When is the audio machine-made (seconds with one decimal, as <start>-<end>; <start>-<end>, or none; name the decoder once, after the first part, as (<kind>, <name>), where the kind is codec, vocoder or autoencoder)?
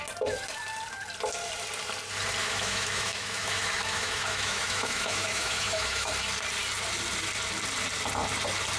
2.4-6.1 (autoencoder, DAC-VAE)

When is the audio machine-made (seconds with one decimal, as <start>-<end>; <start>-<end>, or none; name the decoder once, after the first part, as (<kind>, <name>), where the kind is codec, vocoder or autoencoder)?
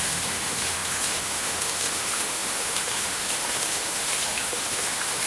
0.0-5.3 (autoencoder, DAC-VAE)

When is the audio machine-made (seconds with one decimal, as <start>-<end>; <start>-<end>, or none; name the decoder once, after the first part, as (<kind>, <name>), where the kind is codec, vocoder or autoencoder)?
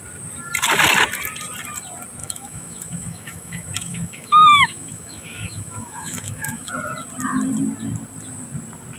2.2-6.7 (autoencoder, DAC-VAE)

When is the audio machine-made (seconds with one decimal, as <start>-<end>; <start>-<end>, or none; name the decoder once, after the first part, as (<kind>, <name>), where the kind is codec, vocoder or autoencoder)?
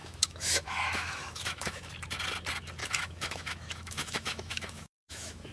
0.0-1.9 (autoencoder, DAC-VAE); 2.8-5.5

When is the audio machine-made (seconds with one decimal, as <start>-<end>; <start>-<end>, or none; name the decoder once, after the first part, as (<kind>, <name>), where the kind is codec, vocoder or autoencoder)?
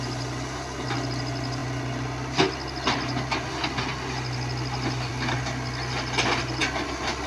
none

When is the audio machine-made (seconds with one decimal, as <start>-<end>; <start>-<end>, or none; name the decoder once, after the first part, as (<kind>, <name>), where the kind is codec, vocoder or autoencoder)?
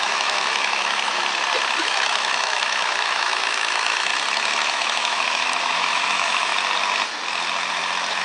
0.0-1.2 (autoencoder, DAC-VAE); 1.8-4.1; 4.7-6.5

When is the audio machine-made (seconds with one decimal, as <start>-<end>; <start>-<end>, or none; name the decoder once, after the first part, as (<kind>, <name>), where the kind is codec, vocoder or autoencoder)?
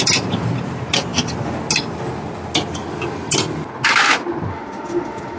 4.5-5.4 (autoencoder, DAC-VAE)